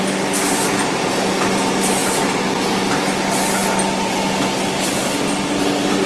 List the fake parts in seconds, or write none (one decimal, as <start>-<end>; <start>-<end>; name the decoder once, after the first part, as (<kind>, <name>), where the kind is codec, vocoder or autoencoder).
none